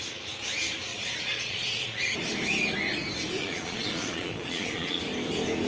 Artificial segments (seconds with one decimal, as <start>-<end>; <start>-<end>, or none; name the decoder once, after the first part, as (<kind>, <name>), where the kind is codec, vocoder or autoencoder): 0.9-2.0 (vocoder, Vocos); 3.4-5.0